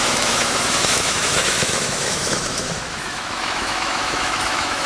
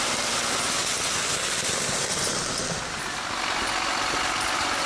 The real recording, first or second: second